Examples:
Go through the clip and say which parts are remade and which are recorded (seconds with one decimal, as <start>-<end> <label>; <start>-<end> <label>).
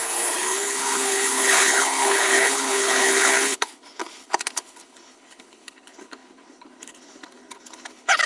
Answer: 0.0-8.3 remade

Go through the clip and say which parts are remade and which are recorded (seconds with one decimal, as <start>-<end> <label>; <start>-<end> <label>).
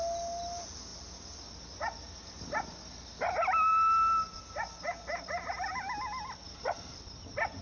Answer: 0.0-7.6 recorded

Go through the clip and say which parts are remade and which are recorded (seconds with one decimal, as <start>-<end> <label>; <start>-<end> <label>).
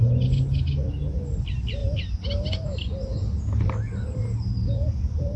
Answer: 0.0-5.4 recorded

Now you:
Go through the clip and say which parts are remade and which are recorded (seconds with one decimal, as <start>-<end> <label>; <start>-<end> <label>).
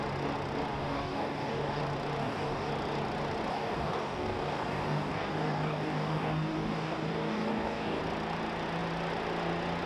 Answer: 0.0-0.7 recorded; 0.7-1.8 remade; 1.8-2.2 recorded; 2.2-2.7 remade; 2.7-3.5 recorded; 3.5-8.0 remade; 8.0-9.9 recorded